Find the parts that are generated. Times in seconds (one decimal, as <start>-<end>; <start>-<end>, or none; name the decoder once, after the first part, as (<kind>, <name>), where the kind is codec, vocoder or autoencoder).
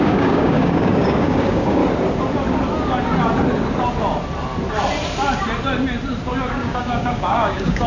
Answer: 0.0-1.8 (codec, DAC); 6.5-7.9